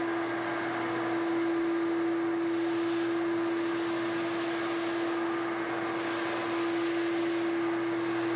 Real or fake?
real